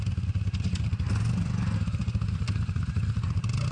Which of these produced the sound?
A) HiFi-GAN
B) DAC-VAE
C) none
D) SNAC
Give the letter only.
C